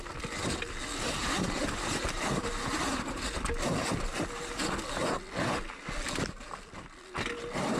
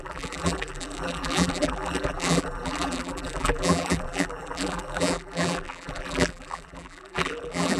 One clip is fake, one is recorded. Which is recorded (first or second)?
first